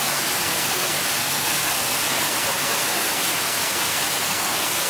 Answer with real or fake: fake